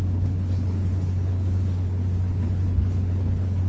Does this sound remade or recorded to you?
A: remade